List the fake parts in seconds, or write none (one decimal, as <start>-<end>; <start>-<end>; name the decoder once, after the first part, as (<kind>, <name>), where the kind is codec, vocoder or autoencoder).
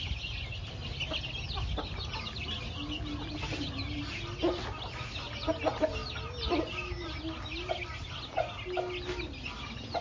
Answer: none